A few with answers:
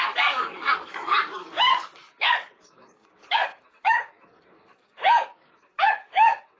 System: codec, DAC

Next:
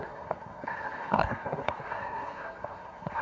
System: codec, SNAC